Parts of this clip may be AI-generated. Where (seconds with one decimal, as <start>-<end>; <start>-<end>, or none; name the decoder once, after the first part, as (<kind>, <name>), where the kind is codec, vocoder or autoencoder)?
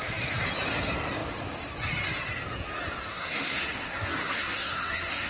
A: 3.1-5.3 (codec, SNAC)